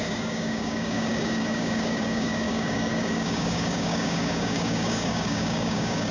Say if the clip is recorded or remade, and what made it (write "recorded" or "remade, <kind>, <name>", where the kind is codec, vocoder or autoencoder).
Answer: remade, codec, DAC